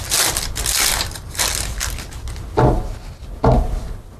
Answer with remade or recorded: recorded